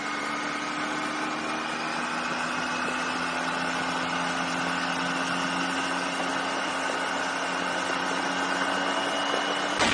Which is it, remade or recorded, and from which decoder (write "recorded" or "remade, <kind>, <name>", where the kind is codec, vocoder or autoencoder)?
recorded